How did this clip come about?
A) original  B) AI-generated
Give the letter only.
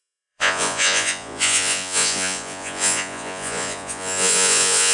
B